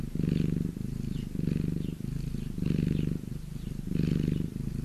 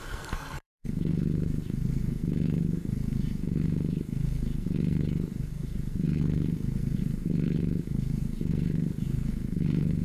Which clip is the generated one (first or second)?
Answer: second